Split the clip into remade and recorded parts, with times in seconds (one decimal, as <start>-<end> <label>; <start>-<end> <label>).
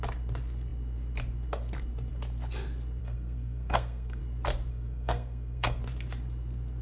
0.0-3.0 recorded; 3.0-4.2 remade; 4.2-4.7 recorded; 4.7-5.8 remade; 5.8-6.8 recorded